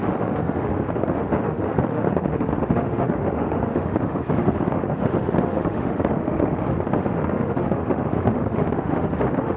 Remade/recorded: remade